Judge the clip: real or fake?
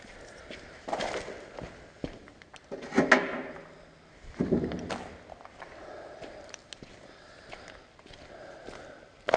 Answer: real